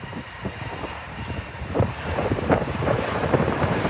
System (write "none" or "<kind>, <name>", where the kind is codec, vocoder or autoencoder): vocoder, BigVGAN v2